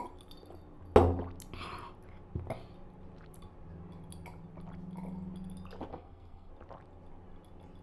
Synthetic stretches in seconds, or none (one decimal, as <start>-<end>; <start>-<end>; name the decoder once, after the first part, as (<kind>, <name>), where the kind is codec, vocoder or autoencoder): 5.9-6.5 (codec, SNAC)